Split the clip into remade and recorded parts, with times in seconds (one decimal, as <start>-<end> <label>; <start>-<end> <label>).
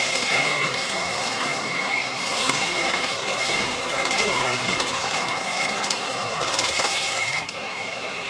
0.0-8.3 remade